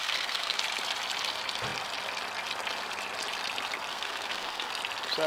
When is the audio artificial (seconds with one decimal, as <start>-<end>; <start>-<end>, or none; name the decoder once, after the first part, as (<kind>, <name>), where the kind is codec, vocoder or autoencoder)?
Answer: 0.0-0.6 (codec, SNAC); 3.9-4.7